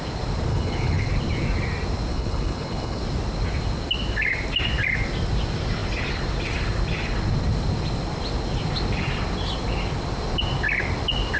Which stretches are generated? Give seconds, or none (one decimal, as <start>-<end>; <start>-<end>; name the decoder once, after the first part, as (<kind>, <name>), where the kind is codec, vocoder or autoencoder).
0.5-1.1 (codec, HILCodec); 2.1-3.0